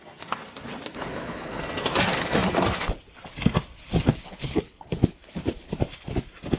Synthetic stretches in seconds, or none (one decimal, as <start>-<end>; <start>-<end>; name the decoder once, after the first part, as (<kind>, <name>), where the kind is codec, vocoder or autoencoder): 0.9-1.6 (codec, HILCodec); 4.1-5.8